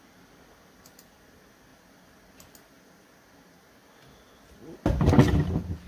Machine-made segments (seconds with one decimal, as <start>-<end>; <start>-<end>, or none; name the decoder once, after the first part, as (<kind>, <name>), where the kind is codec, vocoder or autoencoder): none